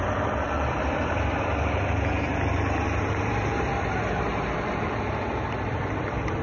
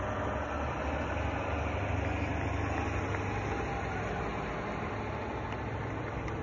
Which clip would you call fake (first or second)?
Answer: first